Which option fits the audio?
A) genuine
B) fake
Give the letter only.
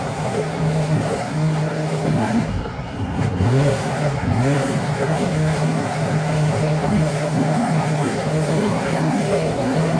B